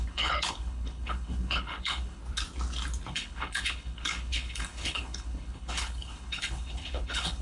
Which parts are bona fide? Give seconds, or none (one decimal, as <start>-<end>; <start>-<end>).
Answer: 2.2-3.1